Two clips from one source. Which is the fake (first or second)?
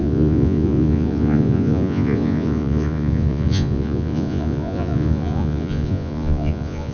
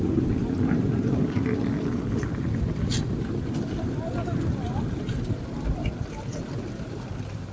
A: first